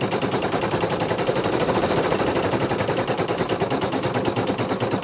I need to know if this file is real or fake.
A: real